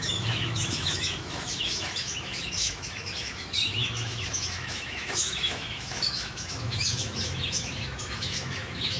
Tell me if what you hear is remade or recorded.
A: remade